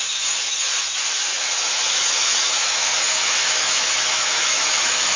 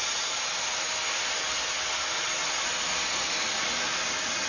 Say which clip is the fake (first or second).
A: first